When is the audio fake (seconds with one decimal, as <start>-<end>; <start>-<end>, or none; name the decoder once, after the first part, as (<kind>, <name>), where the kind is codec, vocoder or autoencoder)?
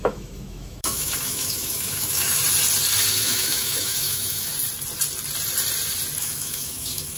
0.0-2.4 (autoencoder, DAC-VAE); 3.1-4.5; 6.2-7.2